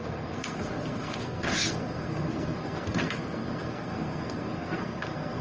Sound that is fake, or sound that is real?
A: fake